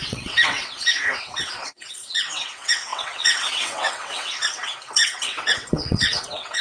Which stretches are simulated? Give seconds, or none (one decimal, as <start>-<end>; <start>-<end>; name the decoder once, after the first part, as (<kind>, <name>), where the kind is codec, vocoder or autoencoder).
0.0-6.6 (vocoder, WaveNeXt)